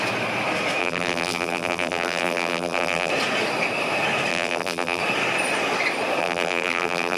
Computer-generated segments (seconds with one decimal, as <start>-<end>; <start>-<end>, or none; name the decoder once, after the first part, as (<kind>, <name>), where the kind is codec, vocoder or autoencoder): 0.8-3.1 (vocoder, BigVGAN v2); 4.3-5.0; 6.2-7.2